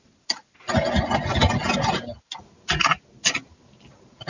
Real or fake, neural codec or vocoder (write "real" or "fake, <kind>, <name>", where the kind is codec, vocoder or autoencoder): real